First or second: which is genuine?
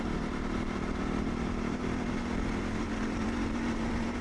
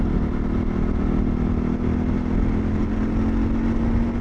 second